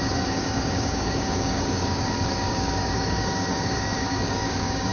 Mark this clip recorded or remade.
remade